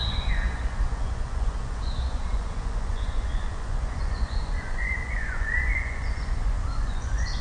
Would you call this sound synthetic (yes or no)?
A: yes